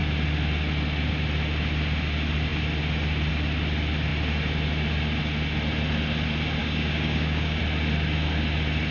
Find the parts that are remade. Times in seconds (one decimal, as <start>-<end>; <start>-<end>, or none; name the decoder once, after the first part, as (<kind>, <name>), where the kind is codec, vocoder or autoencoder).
6.6-7.6 (codec, DAC)